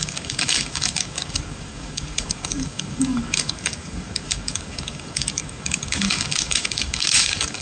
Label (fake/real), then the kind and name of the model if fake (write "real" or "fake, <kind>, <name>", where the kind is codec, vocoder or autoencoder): fake, codec, DAC